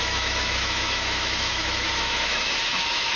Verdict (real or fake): fake